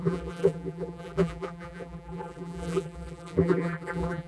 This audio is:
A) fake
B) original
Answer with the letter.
A